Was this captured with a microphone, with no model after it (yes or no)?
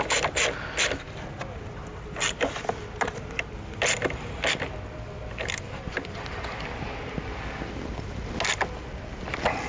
yes